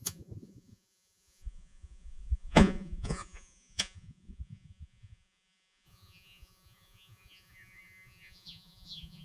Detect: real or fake fake